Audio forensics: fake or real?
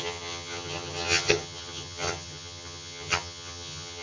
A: fake